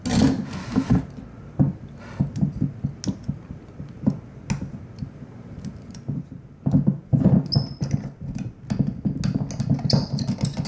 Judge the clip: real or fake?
real